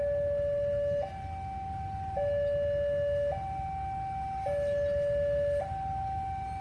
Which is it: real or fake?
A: real